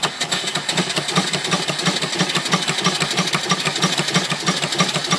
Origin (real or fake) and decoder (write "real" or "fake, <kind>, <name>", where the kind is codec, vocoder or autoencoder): real